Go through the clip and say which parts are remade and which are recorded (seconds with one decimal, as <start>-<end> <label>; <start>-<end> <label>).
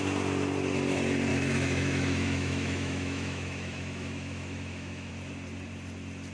0.0-1.3 recorded; 1.3-5.1 remade; 5.1-6.3 recorded